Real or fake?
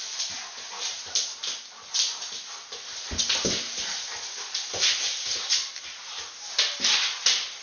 real